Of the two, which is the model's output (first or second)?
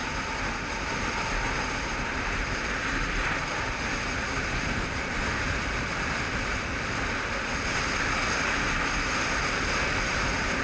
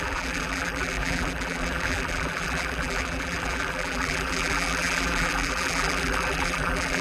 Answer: second